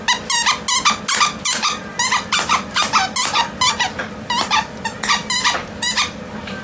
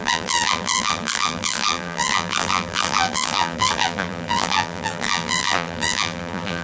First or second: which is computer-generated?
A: second